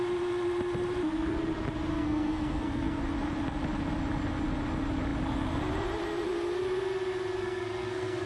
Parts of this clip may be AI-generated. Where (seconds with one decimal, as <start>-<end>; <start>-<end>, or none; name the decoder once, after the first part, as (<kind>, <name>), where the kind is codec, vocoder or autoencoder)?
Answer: 1.9-3.0 (codec, SNAC); 7.4-8.3